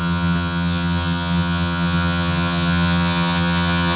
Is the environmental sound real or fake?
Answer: fake